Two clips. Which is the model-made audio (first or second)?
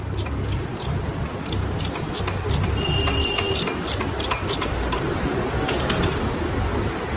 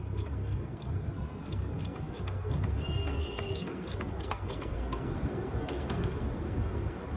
second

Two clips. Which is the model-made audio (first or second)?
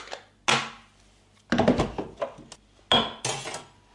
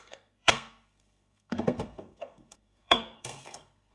second